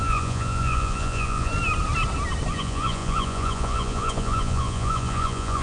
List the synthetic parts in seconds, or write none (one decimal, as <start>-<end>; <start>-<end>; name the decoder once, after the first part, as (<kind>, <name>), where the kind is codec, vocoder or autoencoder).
0.0-1.5 (vocoder, Vocos); 2.5-5.6